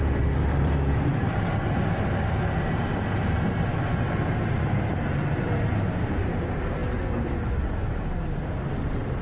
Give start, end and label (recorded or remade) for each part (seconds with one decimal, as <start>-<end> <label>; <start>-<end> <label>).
0.0-6.8 remade; 6.8-7.4 recorded; 7.4-9.2 remade